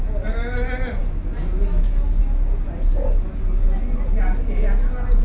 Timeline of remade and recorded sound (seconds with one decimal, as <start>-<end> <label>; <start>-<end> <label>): 0.0-5.2 recorded